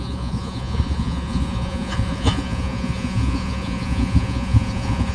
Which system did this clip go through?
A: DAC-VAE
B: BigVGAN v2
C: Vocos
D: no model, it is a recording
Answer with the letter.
C